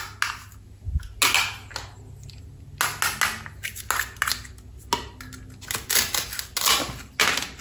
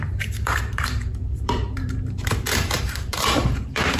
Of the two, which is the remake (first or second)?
second